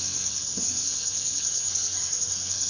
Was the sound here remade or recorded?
remade